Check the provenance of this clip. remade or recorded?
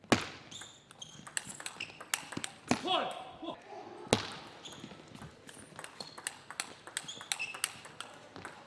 recorded